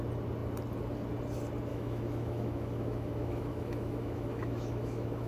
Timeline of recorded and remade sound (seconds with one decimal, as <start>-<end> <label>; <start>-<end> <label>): 0.0-1.7 recorded; 1.7-5.3 remade